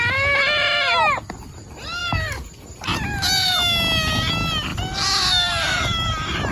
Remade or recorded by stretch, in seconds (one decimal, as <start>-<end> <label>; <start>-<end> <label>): 0.0-6.5 recorded